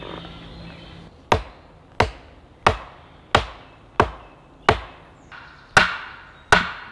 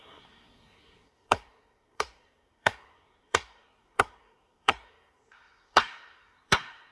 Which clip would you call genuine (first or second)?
first